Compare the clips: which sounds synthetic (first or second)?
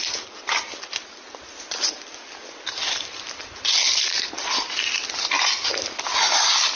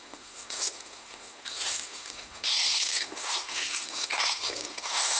second